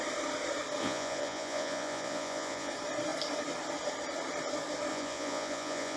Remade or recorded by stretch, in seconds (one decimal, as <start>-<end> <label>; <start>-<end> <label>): 0.0-0.8 recorded; 0.8-2.7 remade; 2.7-4.9 recorded; 4.9-6.0 remade